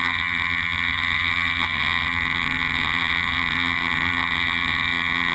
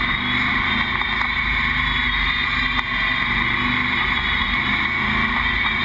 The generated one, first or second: first